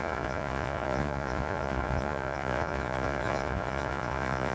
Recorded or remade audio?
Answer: remade